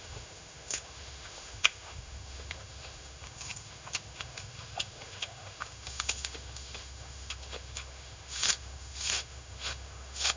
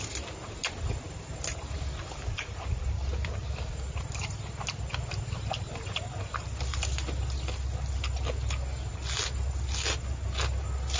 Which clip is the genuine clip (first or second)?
second